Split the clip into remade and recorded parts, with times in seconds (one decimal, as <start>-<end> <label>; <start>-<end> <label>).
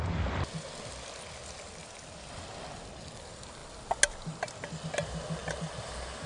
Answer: 0.0-6.3 recorded